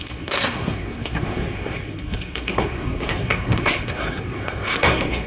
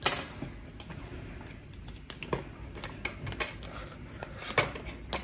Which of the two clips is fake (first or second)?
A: first